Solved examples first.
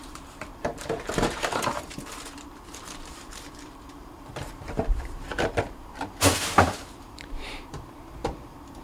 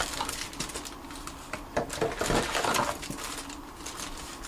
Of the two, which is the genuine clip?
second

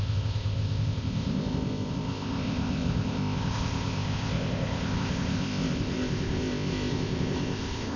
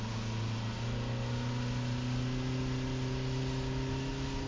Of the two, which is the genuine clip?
second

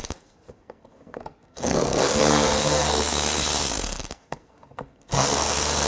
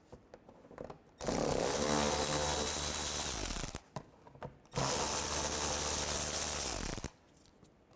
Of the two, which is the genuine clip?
second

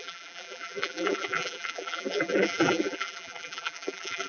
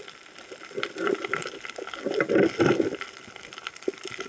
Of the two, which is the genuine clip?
second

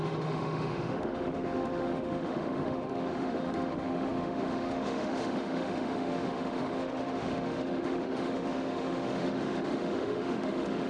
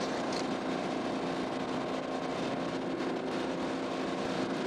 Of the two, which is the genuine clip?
second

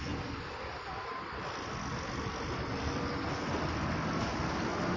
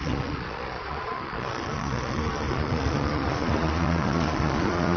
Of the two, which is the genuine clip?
first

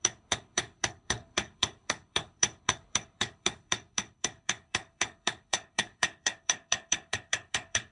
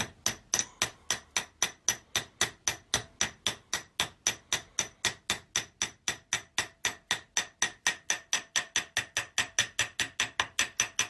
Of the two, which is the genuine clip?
second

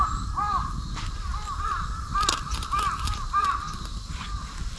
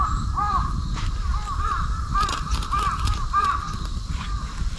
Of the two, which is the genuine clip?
first